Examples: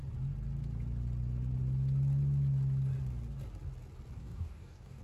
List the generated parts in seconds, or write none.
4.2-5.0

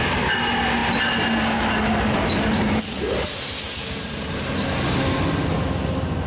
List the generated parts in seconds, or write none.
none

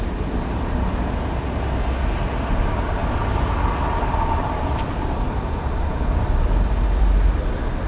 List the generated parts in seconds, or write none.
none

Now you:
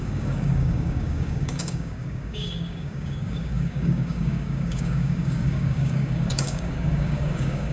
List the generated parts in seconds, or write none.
0.0-7.7

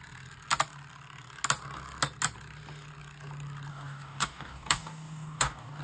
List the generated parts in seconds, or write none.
3.7-5.8

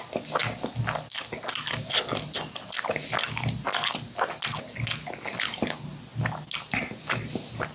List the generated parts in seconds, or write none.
none

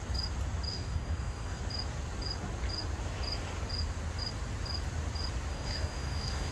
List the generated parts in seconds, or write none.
0.7-1.6; 5.5-6.5